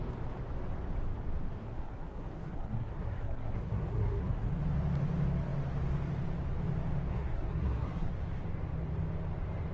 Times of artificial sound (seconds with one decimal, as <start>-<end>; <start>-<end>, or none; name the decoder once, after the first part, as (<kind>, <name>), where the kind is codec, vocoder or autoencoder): 1.6-4.5 (codec, SNAC); 7.1-8.1